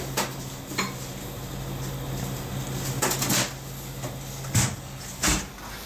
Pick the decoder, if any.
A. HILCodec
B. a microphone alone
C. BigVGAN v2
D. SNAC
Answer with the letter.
B